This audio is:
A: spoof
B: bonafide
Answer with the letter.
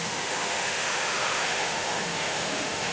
A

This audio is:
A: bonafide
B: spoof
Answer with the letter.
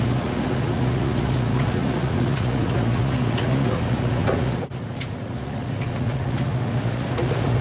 B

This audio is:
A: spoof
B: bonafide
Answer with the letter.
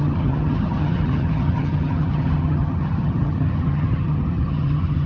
A